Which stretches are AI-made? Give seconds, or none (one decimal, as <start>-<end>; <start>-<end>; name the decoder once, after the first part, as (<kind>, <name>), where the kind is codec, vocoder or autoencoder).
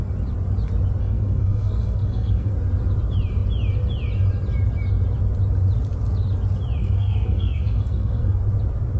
1.0-2.5 (codec, SNAC); 6.8-8.4